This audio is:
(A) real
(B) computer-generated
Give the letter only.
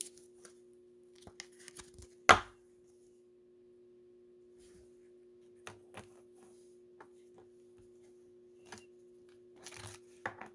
A